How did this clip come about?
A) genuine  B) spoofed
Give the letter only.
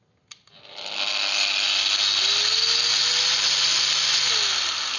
A